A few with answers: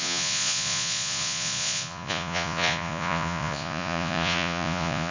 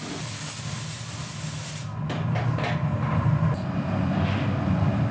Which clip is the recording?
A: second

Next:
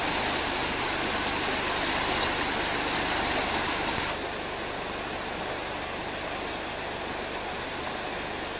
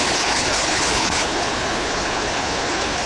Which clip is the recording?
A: first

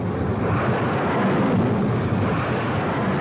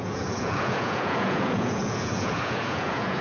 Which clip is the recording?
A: first